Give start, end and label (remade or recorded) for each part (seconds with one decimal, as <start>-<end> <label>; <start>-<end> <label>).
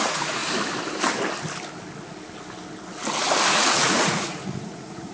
0.0-0.4 remade; 0.4-3.5 recorded; 3.5-5.1 remade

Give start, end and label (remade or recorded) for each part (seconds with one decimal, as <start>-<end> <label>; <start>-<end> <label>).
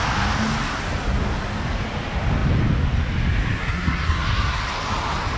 0.0-3.6 recorded; 3.6-4.6 remade; 4.6-5.4 recorded